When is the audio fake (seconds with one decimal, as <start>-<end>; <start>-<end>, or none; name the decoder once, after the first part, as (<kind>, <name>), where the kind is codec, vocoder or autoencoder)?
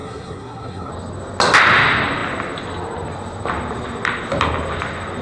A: 0.0-0.9 (codec, SNAC)